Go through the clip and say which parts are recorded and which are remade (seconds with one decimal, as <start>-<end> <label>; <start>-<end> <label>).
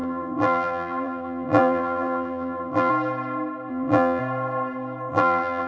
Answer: 0.0-2.9 remade; 2.9-3.7 recorded; 3.7-4.2 remade; 4.2-5.1 recorded; 5.1-5.7 remade